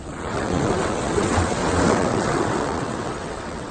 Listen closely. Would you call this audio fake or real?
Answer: fake